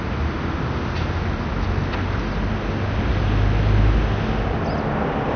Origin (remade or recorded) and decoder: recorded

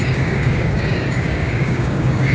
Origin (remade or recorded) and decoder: remade, codec, DAC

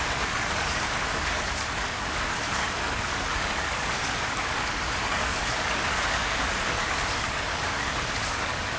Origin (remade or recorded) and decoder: remade, codec, DAC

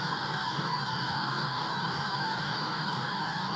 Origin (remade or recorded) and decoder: remade, codec, DAC